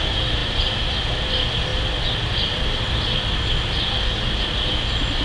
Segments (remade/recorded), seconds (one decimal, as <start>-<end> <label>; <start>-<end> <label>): 0.0-5.2 recorded